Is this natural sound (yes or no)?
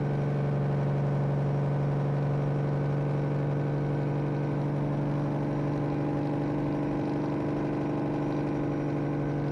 yes